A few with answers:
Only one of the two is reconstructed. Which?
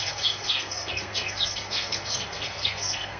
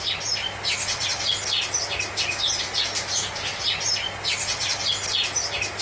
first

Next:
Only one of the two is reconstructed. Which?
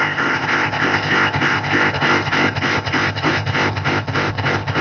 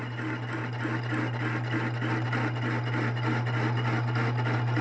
first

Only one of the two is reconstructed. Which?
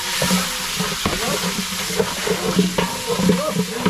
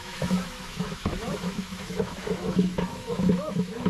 second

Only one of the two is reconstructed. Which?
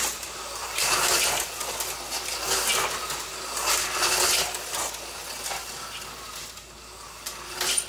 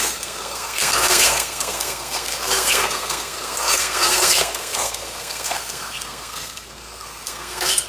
second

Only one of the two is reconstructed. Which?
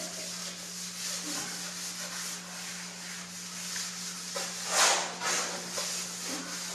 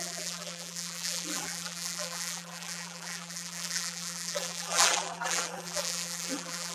second